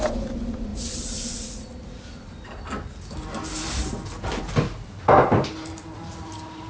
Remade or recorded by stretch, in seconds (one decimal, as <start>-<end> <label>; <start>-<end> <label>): 0.0-6.7 recorded